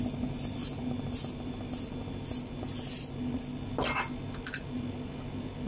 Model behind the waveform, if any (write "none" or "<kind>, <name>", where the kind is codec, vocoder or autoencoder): none